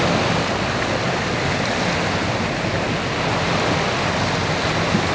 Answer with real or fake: real